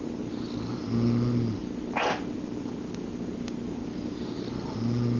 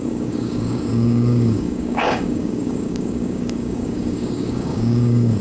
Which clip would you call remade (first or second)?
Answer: second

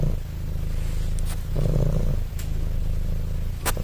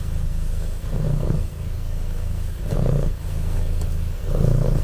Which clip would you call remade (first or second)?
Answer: second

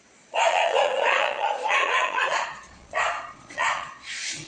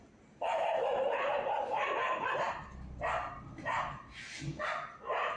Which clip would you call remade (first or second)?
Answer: first